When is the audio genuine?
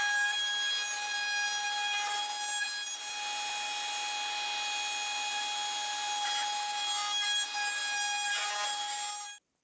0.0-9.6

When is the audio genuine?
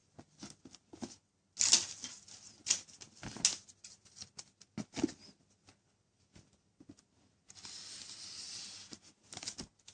0.0-9.9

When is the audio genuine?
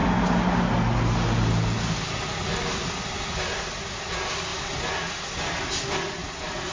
0.0-6.7